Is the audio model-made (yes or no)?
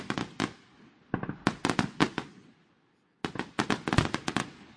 no